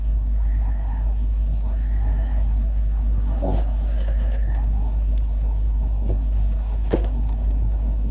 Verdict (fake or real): fake